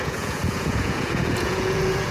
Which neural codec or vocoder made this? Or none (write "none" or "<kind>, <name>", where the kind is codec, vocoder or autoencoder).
vocoder, Vocos